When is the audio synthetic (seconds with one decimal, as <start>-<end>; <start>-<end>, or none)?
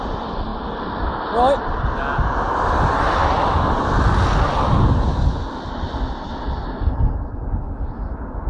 none